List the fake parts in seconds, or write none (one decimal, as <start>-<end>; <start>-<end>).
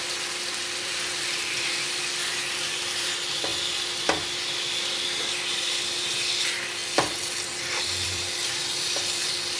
0.0-3.5; 5.3-6.8; 7.8-9.6